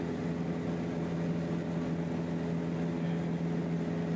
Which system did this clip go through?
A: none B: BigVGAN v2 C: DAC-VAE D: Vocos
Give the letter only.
A